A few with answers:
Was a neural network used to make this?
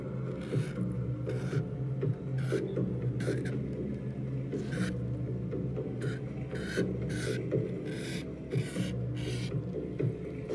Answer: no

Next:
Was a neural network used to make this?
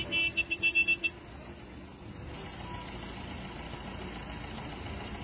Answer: no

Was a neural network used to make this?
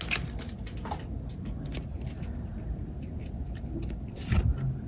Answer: no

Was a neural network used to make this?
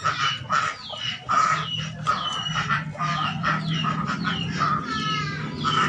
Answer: no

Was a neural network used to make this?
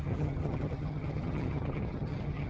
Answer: yes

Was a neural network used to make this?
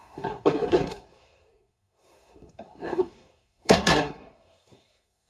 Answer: yes